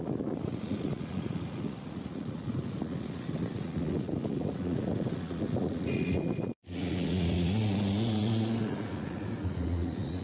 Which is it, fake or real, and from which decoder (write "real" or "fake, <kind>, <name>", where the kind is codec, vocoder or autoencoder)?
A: fake, vocoder, Vocos